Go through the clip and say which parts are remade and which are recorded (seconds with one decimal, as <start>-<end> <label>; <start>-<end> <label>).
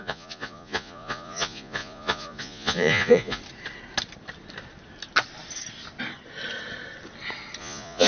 0.0-3.4 remade; 3.4-7.6 recorded; 7.6-8.1 remade